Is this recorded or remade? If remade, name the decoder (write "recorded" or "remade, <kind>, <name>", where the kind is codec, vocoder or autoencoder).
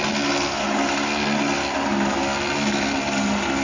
recorded